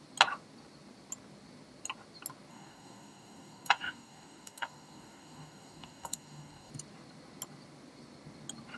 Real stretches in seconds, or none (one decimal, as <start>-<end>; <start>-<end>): 0.0-2.5; 6.7-8.8